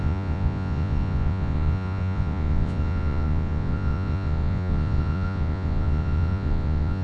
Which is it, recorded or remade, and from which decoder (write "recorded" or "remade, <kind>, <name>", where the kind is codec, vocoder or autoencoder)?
remade, vocoder, Vocos